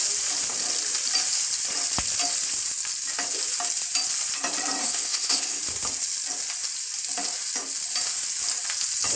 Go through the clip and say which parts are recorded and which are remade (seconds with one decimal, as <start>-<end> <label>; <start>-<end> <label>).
0.0-4.8 recorded; 4.8-5.6 remade; 5.6-9.2 recorded